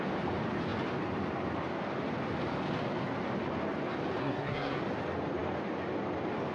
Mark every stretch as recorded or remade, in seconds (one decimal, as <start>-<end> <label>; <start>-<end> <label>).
0.0-4.2 recorded; 4.2-4.8 remade; 4.8-6.5 recorded